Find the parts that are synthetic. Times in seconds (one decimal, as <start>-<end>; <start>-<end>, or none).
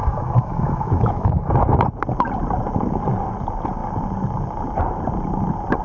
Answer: 0.0-1.5